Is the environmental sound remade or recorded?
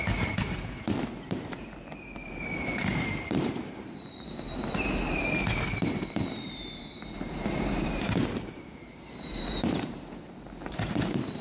remade